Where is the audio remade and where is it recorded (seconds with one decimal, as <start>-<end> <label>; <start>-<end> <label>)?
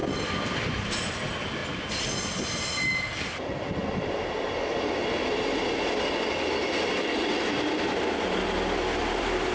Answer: 0.0-1.6 remade; 1.6-3.1 recorded; 3.1-3.8 remade; 3.8-7.1 recorded; 7.1-9.5 remade